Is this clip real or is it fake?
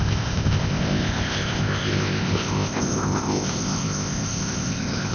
fake